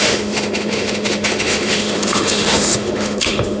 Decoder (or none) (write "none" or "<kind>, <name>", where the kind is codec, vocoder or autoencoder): autoencoder, DAC-VAE